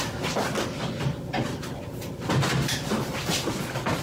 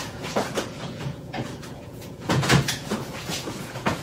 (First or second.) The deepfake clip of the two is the second